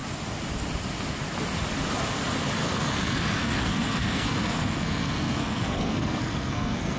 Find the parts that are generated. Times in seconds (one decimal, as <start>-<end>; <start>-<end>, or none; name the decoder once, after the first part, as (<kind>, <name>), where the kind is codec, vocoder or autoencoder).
2.6-7.0 (codec, SNAC)